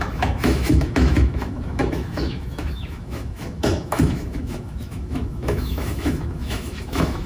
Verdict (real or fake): fake